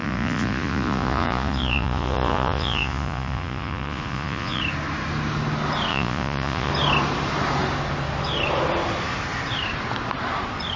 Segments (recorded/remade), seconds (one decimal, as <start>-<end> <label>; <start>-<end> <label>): 0.0-4.6 remade; 4.6-5.9 recorded; 5.9-6.7 remade; 6.7-10.8 recorded